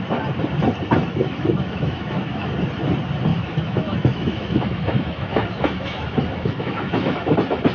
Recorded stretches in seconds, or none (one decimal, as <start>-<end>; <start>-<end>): 0.0-1.1; 2.5-3.3; 7.3-7.7